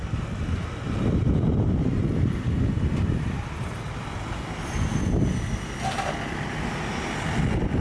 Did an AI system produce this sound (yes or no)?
no